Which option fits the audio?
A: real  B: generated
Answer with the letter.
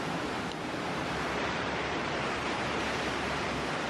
B